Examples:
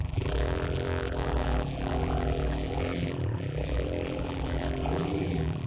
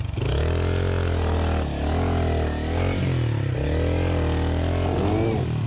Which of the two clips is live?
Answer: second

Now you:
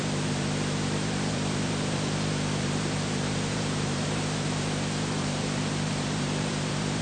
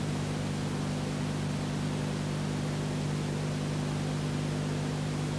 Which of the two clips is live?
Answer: second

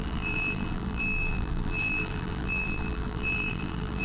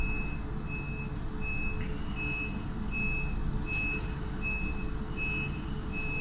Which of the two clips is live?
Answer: second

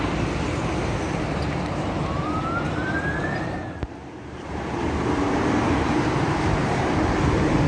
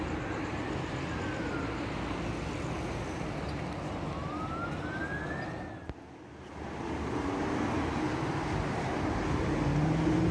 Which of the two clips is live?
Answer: second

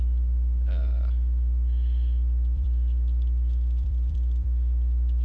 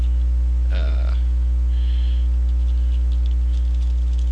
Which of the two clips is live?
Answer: second